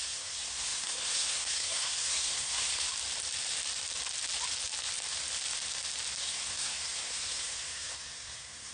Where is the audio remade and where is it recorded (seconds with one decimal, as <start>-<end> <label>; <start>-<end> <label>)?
0.0-2.9 remade; 2.9-6.2 recorded; 6.2-8.7 remade